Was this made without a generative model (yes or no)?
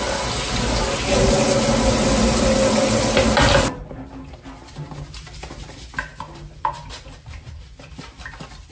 yes